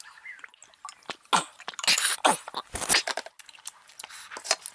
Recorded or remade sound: recorded